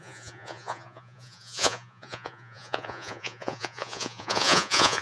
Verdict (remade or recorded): remade